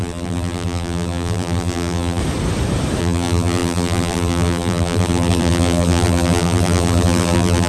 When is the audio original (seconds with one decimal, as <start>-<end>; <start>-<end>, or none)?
2.2-3.0